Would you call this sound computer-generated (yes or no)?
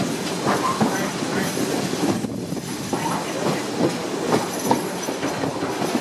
no